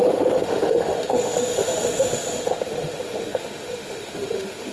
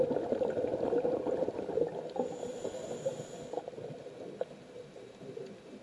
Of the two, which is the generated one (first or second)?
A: first